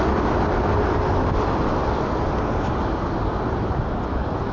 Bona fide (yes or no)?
yes